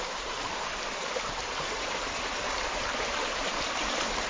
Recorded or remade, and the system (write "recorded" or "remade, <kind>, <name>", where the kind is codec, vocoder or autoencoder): remade, vocoder, BigVGAN v2